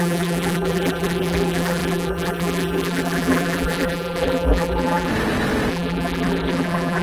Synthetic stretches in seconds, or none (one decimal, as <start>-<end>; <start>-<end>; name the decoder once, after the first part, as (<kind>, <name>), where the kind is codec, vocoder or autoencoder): 0.0-5.1 (vocoder, BigVGAN v2); 5.7-7.0